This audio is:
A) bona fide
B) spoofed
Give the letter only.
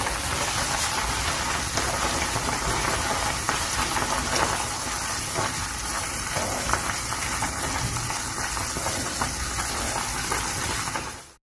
A